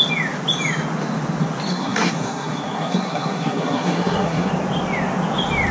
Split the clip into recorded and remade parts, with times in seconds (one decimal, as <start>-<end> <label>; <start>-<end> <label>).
0.0-1.7 recorded; 1.7-4.5 remade; 4.5-5.7 recorded